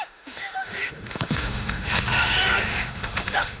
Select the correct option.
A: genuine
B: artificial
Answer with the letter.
B